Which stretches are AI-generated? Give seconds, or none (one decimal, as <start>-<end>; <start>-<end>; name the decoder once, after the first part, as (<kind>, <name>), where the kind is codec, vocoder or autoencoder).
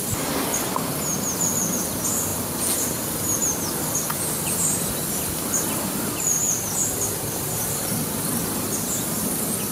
none